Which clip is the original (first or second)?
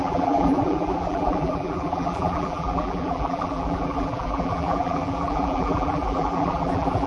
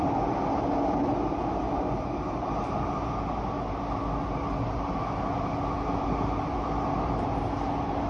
second